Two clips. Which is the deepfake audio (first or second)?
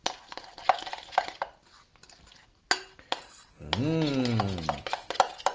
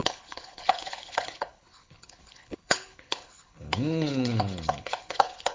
second